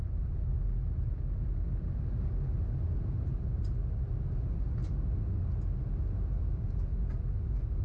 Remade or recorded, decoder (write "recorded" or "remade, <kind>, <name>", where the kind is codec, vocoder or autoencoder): recorded